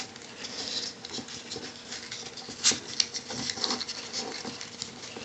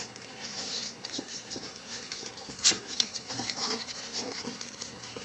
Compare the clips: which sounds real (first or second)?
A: first